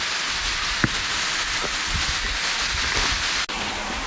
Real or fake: real